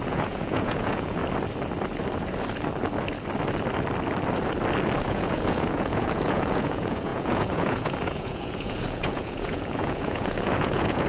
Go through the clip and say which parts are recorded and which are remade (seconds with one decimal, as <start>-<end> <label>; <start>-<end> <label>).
0.0-1.2 remade; 1.2-5.0 recorded; 5.0-11.1 remade